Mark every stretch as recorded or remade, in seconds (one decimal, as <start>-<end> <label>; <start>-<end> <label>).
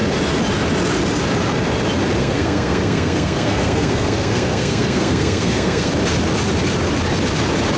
0.0-2.2 recorded; 2.2-5.9 remade; 5.9-7.8 recorded